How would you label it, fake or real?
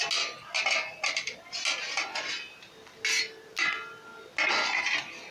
real